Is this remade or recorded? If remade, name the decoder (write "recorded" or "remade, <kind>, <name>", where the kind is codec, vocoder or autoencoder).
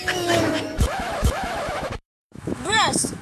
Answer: remade, autoencoder, DAC-VAE